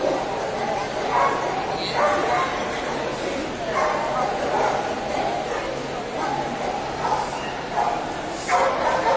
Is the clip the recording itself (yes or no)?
yes